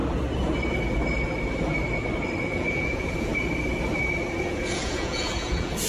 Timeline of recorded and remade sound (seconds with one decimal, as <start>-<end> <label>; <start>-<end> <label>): 0.0-2.4 recorded; 2.4-3.3 remade; 3.3-4.4 recorded; 4.4-5.9 remade

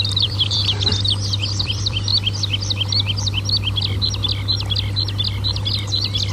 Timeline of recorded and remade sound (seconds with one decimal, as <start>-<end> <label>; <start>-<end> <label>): 0.0-2.1 remade; 2.1-6.3 recorded

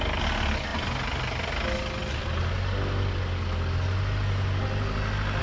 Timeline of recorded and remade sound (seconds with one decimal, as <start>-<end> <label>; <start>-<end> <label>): 0.0-5.4 recorded

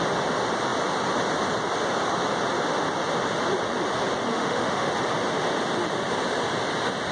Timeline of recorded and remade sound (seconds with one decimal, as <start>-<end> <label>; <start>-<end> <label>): 0.0-4.3 recorded; 4.3-4.9 remade; 4.9-7.1 recorded

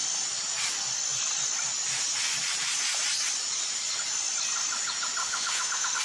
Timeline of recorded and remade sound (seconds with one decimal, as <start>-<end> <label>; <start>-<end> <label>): 0.0-5.2 recorded; 5.2-6.0 remade

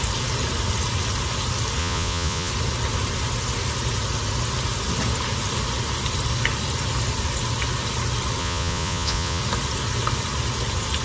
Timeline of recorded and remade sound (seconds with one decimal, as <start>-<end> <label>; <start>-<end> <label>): 0.0-1.8 recorded; 1.8-2.5 remade; 2.5-8.4 recorded; 8.4-9.4 remade; 9.4-11.0 recorded

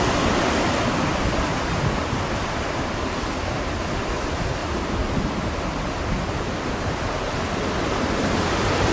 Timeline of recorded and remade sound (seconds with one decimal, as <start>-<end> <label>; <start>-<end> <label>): 0.0-8.9 recorded

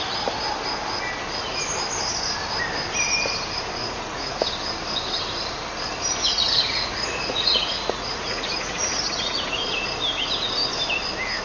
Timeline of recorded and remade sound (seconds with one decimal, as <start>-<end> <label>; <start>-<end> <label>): 0.0-3.8 recorded; 3.8-4.4 remade; 4.4-6.2 recorded; 6.2-9.8 remade; 9.8-11.4 recorded